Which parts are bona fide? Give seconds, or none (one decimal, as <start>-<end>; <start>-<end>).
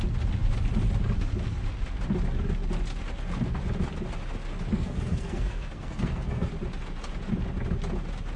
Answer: 0.0-4.7; 6.5-8.4